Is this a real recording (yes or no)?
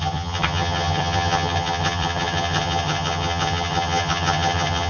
no